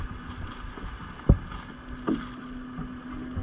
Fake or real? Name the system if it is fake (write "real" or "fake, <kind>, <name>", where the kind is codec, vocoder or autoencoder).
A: real